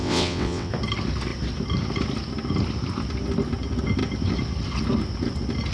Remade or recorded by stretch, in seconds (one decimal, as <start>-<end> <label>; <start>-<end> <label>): 0.0-0.7 remade; 0.7-5.7 recorded